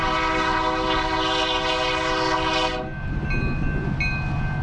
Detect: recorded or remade recorded